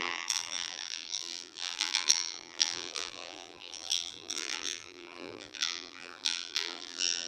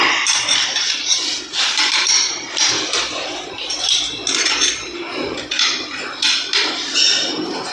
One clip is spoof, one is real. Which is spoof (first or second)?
first